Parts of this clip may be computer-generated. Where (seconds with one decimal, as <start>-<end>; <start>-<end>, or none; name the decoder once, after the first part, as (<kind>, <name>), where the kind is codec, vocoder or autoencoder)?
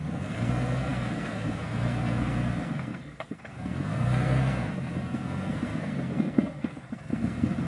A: 0.0-7.7 (codec, SNAC)